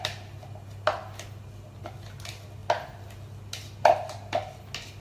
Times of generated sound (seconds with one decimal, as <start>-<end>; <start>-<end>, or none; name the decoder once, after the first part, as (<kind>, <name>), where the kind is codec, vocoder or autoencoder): none

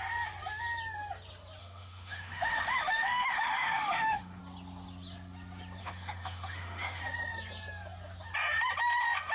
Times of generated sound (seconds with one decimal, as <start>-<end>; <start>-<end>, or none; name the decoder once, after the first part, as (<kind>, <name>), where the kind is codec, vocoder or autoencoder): 1.6-4.4 (autoencoder, DAC-VAE); 5.8-7.0